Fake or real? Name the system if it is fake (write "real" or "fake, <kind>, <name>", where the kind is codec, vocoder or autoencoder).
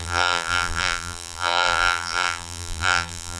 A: fake, vocoder, BigVGAN v2